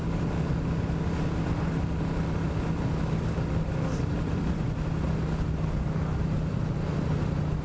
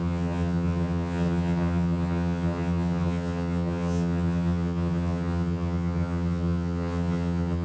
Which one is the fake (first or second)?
second